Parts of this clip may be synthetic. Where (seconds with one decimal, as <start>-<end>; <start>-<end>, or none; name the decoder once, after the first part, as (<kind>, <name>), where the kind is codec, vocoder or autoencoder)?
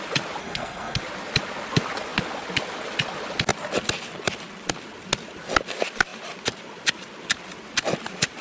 0.4-1.0 (codec, SNAC)